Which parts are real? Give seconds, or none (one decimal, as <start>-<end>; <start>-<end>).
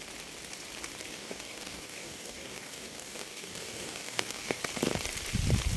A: 0.0-1.1; 4.6-5.8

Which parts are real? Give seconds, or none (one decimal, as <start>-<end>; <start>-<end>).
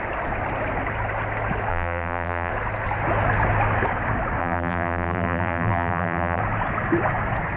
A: 0.0-1.7; 2.5-4.4; 6.4-7.6